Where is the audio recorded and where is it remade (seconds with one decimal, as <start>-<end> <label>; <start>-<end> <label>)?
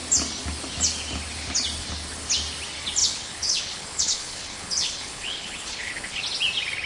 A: 0.0-3.0 recorded; 3.0-6.2 remade; 6.2-6.9 recorded